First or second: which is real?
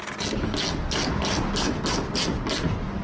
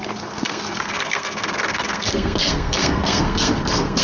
first